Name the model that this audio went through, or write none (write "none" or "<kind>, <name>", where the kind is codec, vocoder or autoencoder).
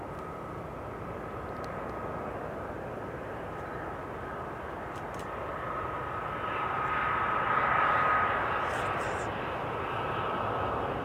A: none